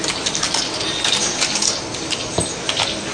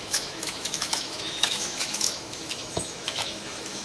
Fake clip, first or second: second